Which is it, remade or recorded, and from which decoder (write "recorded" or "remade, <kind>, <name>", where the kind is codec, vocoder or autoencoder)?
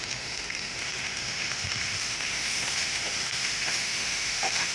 remade, autoencoder, DAC-VAE